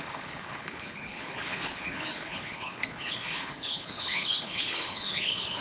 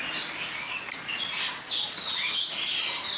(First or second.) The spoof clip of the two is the first